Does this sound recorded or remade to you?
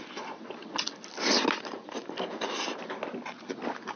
recorded